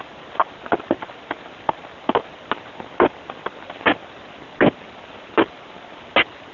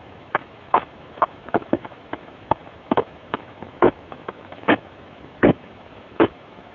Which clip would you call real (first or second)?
first